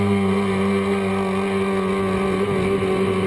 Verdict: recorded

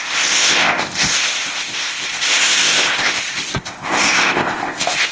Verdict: remade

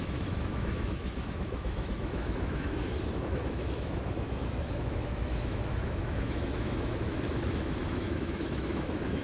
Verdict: remade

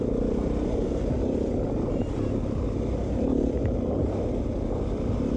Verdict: remade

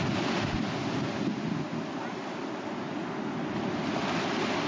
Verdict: recorded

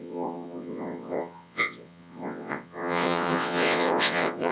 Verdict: remade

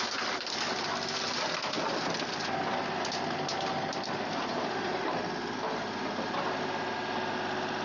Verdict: recorded